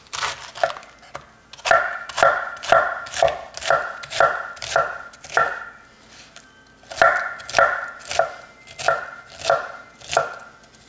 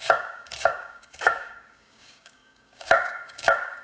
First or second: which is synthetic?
second